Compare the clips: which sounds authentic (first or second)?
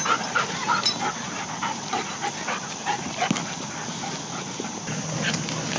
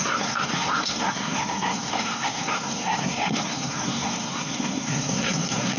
first